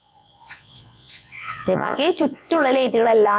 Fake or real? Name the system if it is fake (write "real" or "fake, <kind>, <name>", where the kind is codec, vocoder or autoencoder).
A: fake, vocoder, Vocos